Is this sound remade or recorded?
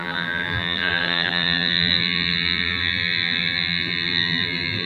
remade